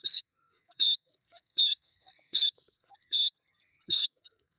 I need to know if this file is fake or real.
fake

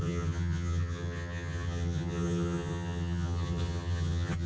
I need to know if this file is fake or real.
fake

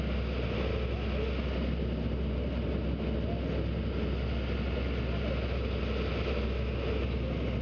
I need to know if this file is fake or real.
real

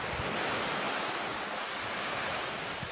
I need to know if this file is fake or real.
real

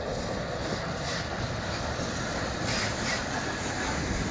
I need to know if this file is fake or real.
real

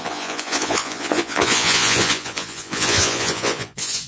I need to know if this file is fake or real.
fake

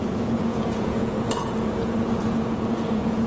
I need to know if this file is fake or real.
fake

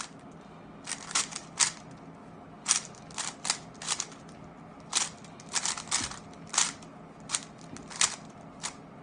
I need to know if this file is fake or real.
real